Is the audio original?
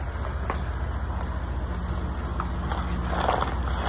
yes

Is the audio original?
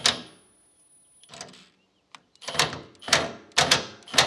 yes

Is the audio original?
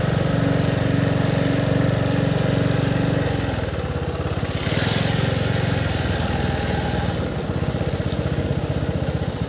yes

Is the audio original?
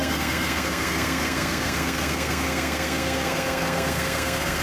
no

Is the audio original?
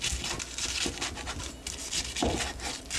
yes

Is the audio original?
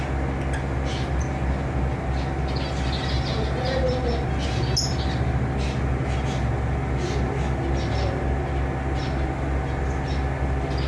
yes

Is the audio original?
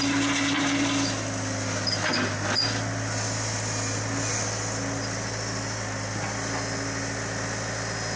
yes